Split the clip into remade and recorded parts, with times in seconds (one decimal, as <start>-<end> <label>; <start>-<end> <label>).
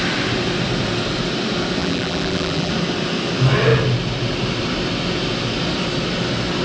0.0-1.8 recorded; 1.8-2.7 remade; 2.7-6.6 recorded